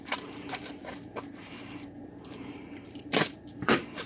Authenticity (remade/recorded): remade